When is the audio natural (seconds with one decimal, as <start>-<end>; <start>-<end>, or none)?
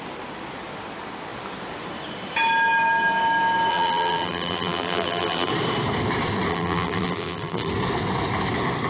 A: 0.0-3.7; 5.5-6.5; 7.7-8.9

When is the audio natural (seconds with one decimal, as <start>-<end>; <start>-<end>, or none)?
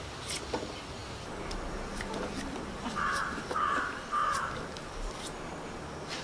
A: 0.0-1.0; 3.8-4.2; 5.1-6.2